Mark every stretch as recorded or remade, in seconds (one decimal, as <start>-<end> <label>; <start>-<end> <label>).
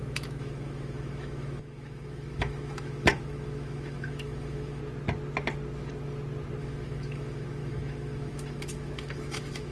0.0-4.8 remade; 4.8-6.6 recorded; 6.6-9.7 remade